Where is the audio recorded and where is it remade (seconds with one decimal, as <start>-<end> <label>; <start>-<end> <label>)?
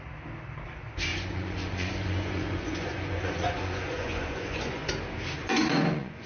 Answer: 0.0-1.1 recorded; 1.1-4.9 remade; 4.9-5.4 recorded; 5.4-6.3 remade